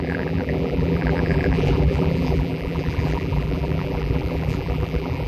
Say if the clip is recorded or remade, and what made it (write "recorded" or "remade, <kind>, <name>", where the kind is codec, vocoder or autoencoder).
remade, vocoder, BigVGAN v2